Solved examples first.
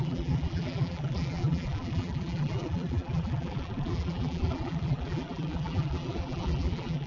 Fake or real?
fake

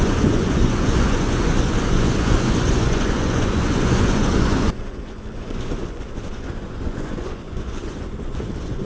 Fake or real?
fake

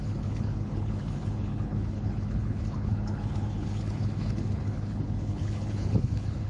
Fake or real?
fake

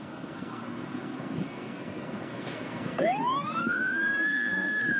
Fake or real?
fake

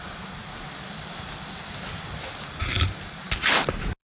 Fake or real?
real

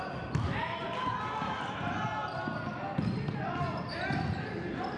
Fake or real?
real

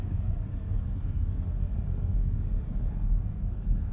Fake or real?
fake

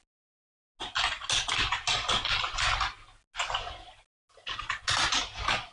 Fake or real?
real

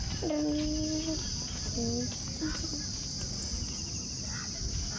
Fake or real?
real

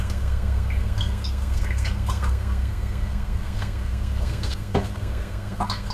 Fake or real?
fake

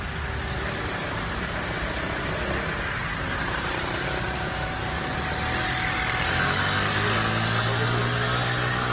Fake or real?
real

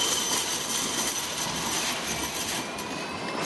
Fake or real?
real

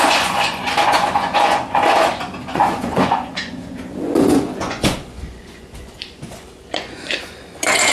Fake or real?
fake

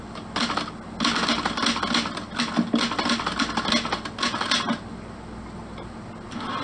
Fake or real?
real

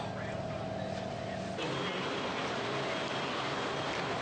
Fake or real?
real